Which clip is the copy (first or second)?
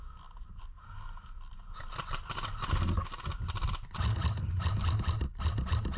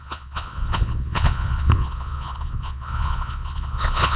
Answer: second